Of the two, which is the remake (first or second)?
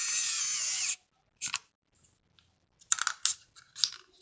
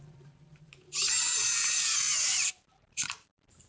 second